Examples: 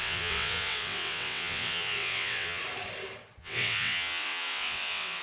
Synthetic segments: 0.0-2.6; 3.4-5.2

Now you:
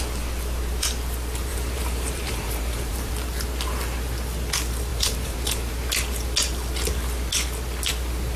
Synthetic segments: 1.5-3.1; 4.9-5.7

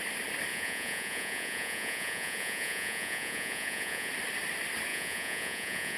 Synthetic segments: 0.5-4.1; 4.9-6.0